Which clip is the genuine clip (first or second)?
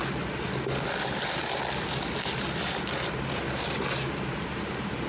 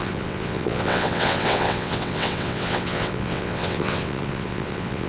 first